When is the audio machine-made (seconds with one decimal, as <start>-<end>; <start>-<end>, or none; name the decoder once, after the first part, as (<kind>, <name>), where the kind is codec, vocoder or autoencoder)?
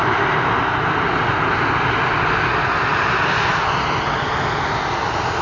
none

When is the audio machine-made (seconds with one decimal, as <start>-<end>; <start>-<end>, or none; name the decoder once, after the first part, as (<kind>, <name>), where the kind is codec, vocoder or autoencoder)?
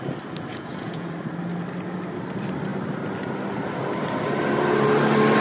0.5-1.1 (vocoder, Vocos)